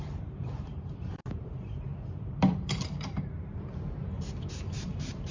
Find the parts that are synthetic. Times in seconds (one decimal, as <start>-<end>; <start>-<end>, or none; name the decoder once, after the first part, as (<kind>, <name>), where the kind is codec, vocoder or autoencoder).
0.0-5.3 (vocoder, BigVGAN v2)